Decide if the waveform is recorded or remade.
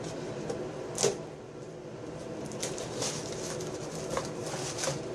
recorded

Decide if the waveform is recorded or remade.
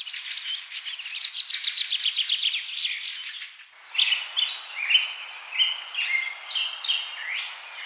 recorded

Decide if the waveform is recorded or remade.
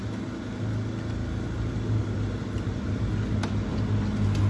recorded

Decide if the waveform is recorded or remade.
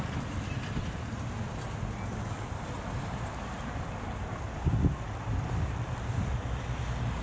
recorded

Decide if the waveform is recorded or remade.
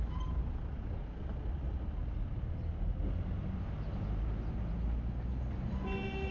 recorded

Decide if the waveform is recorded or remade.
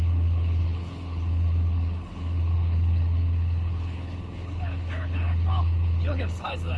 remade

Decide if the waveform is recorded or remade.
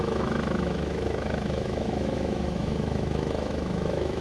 remade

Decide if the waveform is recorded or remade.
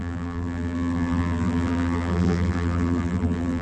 remade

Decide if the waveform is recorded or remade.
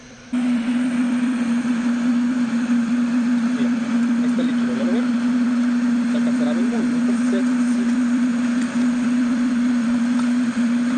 remade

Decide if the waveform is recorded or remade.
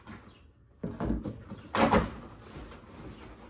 recorded